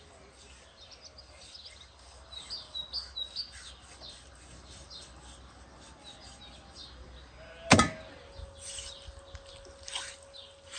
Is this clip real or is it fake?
real